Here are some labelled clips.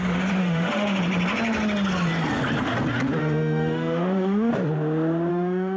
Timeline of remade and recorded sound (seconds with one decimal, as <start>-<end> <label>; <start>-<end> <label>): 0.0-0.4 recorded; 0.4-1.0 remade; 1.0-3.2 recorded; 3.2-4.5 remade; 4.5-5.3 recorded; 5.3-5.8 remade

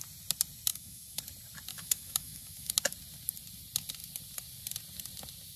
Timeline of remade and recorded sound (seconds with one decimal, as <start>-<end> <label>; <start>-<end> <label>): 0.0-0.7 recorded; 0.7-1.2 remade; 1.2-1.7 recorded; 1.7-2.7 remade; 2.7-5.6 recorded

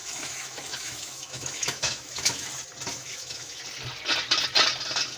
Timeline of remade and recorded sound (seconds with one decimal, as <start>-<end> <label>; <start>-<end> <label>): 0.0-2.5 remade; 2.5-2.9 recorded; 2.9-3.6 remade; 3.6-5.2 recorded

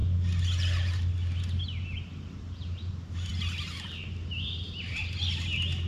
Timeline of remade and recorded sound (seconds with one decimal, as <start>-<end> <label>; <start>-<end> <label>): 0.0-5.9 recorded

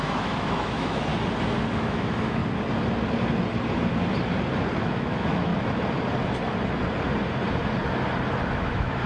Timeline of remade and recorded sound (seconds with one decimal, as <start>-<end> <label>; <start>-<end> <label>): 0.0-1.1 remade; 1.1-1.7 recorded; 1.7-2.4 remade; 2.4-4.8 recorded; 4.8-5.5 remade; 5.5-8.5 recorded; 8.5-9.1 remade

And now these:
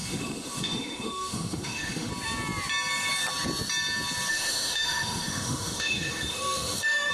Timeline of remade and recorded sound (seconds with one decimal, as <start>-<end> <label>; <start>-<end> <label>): 0.0-2.1 remade; 2.1-4.3 recorded; 4.3-7.1 remade